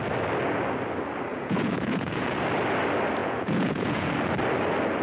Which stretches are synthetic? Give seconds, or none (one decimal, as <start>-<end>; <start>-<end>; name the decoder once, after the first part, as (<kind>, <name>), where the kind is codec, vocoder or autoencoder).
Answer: 1.3-2.4 (vocoder, Vocos); 3.2-4.1